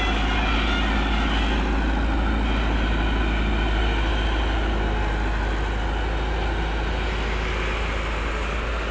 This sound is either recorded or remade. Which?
recorded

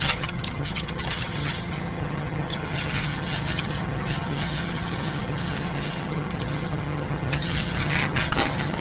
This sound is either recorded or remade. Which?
remade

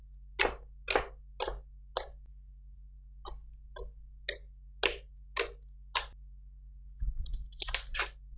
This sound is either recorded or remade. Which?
recorded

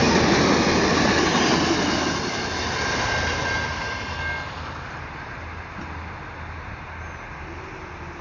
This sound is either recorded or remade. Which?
recorded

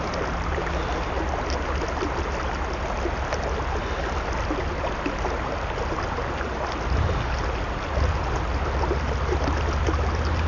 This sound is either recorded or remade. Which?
recorded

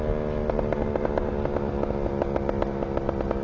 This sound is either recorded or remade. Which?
recorded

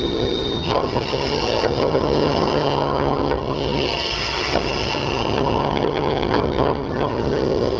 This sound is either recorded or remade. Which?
remade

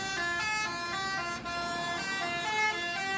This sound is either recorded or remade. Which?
recorded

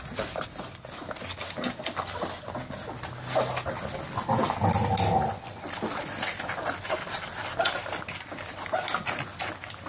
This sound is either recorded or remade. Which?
recorded